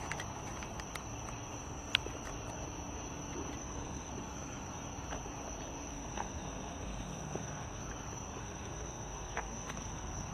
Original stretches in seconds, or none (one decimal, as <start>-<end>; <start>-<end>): 0.0-3.6; 4.1-5.9; 7.8-8.4